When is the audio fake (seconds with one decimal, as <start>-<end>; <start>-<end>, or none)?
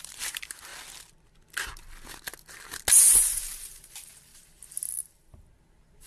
0.0-0.7; 3.0-4.6; 5.2-6.1